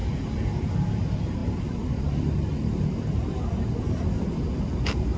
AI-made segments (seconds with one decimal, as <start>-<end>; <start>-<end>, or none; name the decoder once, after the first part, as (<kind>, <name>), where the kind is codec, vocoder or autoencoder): none